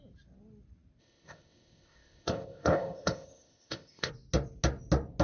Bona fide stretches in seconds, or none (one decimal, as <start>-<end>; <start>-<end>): 0.0-1.0; 4.1-5.2